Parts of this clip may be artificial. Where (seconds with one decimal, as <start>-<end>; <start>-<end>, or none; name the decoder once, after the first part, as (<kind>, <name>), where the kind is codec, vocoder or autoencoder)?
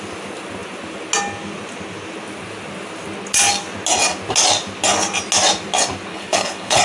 6.1-6.8 (codec, HILCodec)